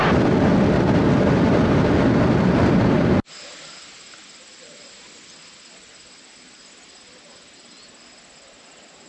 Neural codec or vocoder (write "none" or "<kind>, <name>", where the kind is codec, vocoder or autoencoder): none